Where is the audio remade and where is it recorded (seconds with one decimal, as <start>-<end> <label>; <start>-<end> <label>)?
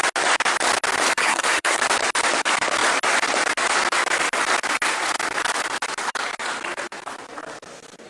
0.0-1.2 recorded; 1.2-1.8 remade; 1.8-8.1 recorded